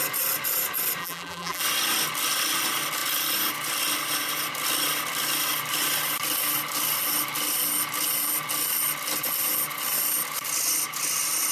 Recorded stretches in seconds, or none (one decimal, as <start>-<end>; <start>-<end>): 0.0-1.0; 1.6-11.5